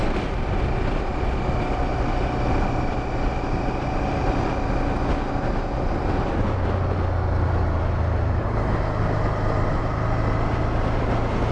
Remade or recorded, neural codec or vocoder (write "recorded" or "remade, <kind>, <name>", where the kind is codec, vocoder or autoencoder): recorded